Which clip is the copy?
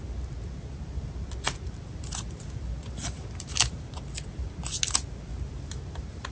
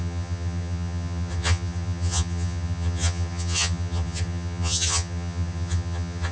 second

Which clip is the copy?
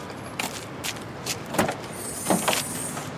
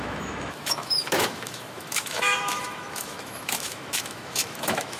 second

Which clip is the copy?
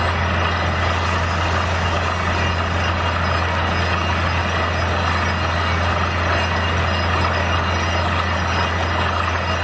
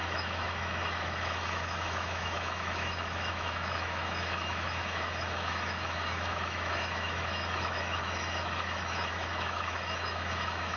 second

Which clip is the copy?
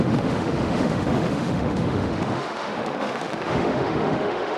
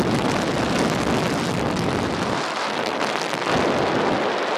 first